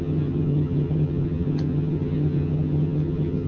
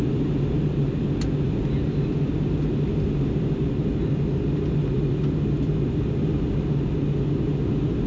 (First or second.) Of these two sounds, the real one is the second